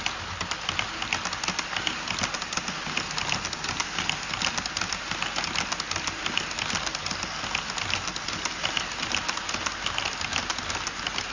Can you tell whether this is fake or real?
real